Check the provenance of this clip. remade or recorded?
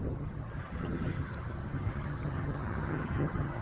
remade